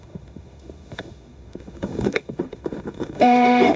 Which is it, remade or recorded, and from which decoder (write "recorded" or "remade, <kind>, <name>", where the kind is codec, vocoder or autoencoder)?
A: remade, autoencoder, DAC-VAE